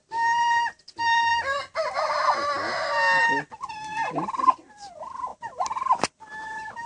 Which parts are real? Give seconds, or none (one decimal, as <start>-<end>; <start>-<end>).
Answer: 0.0-6.9